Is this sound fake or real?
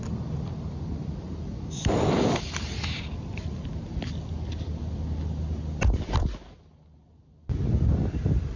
real